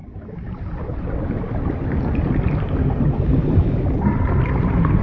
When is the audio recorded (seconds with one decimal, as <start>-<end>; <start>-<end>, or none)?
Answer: 0.0-5.0